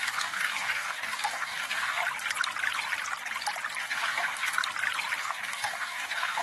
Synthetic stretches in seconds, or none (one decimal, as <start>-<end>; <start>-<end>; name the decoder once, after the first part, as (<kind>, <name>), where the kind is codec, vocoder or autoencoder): 0.0-2.0 (codec, DAC); 3.8-4.6; 5.2-6.4